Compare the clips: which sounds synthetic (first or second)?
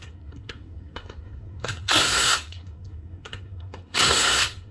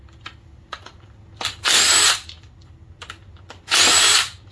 first